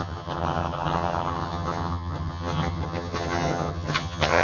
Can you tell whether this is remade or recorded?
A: remade